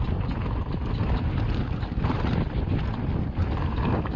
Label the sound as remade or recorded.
recorded